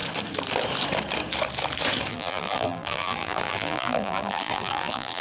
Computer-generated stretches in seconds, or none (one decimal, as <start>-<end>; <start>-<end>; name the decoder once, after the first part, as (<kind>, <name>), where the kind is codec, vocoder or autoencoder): 2.1-5.2 (vocoder, BigVGAN v2)